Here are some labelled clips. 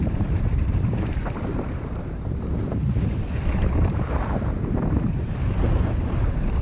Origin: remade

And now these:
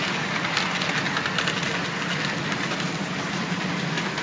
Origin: recorded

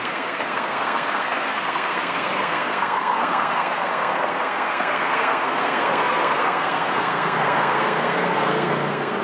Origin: remade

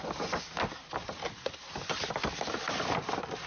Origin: recorded